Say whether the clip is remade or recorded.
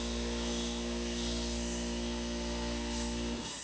remade